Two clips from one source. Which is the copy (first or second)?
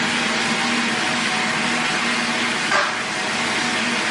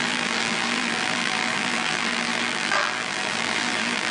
second